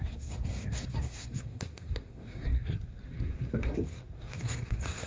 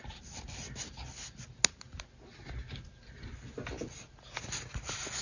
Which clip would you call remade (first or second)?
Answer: first